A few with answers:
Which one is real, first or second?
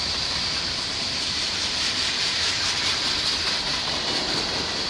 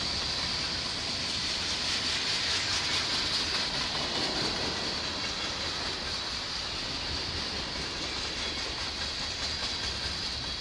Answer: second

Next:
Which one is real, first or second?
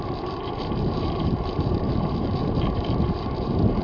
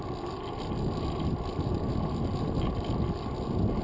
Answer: second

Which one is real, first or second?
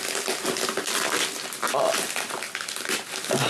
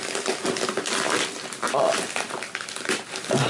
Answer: first